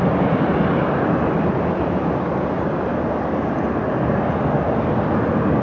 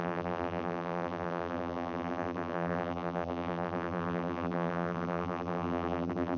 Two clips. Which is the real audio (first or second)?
first